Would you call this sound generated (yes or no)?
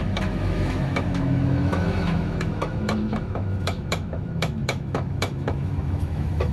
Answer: yes